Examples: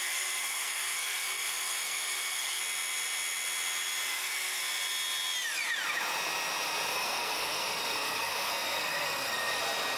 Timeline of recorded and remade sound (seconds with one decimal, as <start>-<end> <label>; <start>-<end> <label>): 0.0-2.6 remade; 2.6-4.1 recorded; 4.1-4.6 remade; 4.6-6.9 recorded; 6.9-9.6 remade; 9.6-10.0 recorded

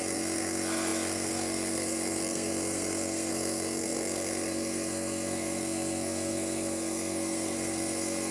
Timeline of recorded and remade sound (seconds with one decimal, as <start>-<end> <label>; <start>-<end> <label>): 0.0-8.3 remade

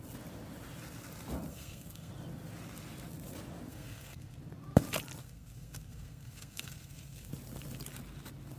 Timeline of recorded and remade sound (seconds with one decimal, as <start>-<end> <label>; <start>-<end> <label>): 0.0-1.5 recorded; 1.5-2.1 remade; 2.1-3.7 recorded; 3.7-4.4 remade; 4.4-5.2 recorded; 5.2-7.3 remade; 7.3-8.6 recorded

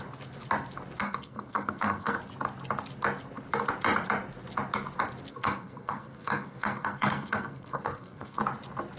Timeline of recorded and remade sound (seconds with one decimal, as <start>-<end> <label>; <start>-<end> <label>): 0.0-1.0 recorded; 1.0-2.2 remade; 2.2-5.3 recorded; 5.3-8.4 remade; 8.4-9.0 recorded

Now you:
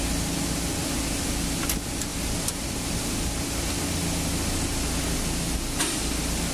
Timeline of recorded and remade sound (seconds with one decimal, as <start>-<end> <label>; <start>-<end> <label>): 0.0-6.5 recorded